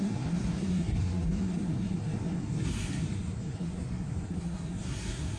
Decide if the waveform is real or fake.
fake